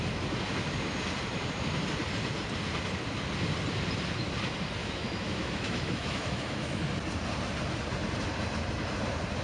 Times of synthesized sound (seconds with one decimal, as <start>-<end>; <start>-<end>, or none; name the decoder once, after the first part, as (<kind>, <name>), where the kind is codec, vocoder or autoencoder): 4.8-6.8 (autoencoder, DAC-VAE)